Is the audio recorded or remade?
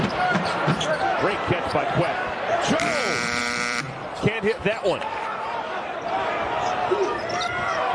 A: remade